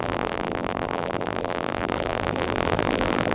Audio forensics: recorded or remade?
remade